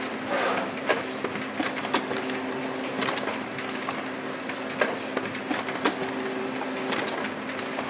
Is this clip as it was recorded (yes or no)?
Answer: yes